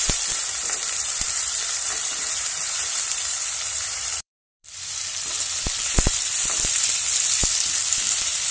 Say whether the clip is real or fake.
fake